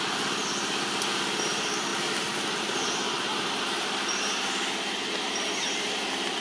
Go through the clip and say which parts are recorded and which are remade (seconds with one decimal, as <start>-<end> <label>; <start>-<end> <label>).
0.0-6.4 recorded